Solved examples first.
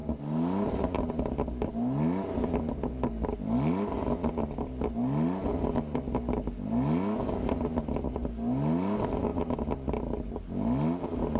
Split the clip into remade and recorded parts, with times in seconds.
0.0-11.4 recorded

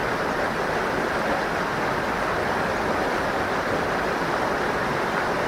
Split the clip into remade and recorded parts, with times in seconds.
0.0-5.5 recorded